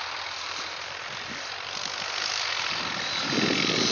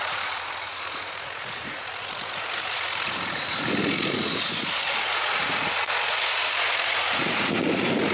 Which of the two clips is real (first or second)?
first